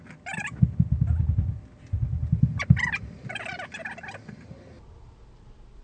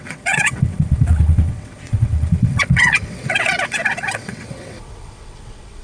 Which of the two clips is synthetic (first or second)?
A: second